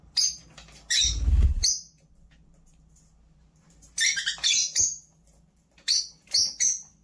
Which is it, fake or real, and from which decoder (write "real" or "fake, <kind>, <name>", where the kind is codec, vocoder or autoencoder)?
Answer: real